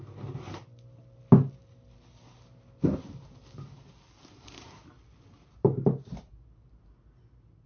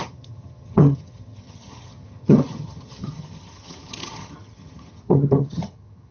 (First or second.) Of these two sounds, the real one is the first